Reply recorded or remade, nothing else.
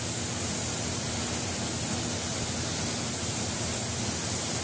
recorded